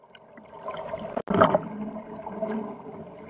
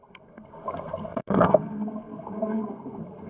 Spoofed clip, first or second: second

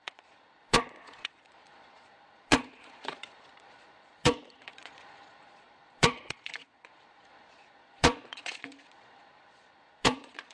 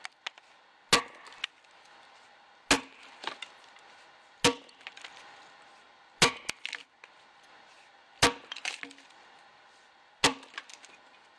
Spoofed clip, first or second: first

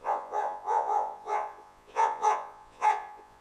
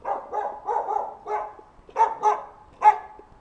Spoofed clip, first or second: first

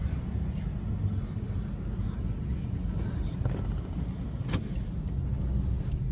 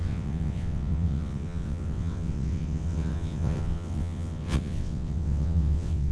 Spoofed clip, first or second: second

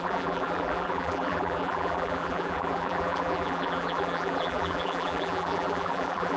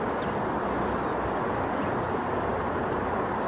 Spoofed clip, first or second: first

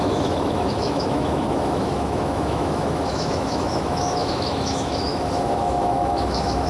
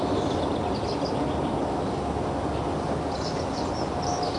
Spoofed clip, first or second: first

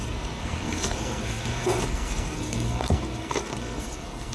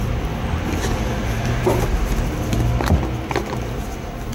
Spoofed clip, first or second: first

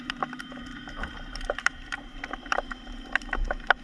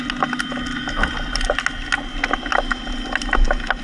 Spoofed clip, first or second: first